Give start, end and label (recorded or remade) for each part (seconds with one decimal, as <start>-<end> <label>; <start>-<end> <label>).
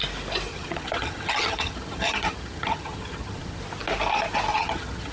0.0-0.5 recorded; 0.5-3.6 remade; 3.6-4.5 recorded; 4.5-5.1 remade